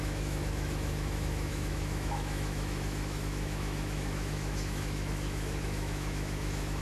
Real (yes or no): no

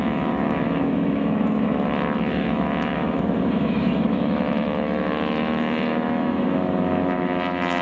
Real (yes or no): no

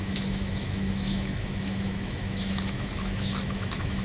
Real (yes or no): no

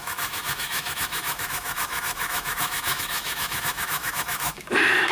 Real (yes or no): no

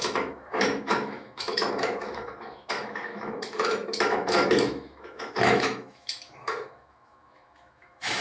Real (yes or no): no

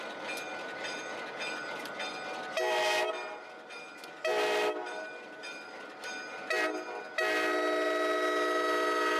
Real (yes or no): yes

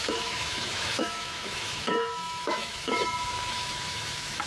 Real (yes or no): no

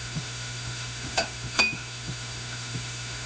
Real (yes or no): no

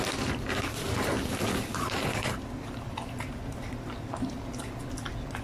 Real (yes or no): yes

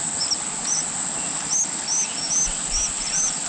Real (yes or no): yes